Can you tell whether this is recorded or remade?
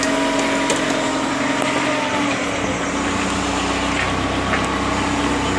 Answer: recorded